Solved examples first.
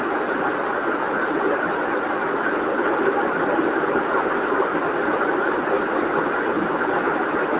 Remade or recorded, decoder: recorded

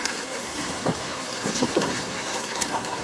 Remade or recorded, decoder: remade, codec, SNAC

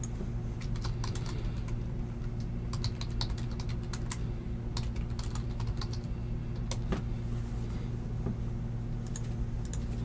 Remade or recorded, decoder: recorded